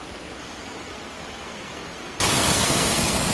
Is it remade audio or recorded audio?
remade